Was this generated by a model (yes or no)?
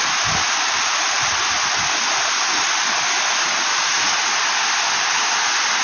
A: no